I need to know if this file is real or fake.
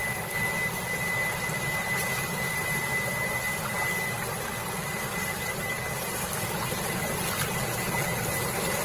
real